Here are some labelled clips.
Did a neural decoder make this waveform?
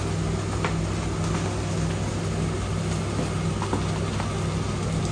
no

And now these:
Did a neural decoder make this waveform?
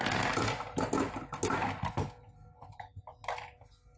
no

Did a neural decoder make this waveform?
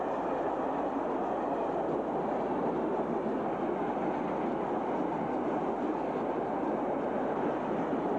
no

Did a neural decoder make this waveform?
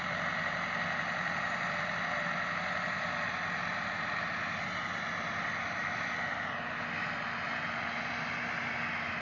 no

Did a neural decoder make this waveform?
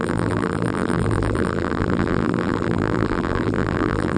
yes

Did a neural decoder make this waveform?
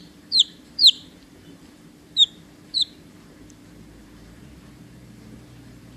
yes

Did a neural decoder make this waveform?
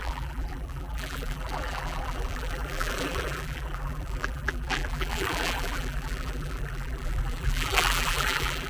yes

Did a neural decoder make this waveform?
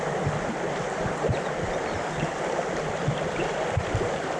no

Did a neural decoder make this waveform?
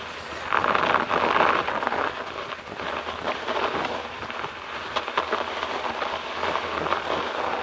no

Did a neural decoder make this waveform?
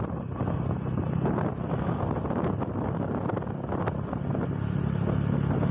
no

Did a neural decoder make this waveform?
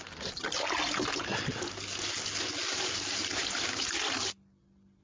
no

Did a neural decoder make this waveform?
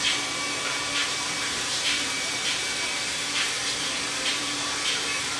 yes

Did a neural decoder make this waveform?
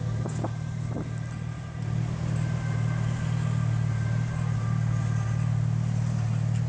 no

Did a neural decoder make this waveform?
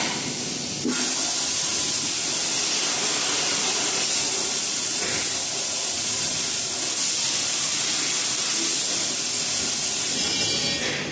no